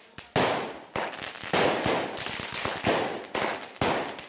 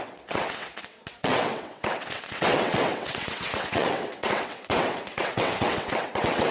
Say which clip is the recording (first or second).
first